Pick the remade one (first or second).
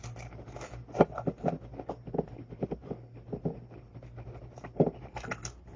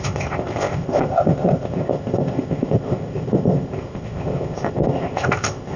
second